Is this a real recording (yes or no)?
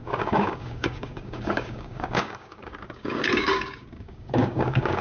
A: no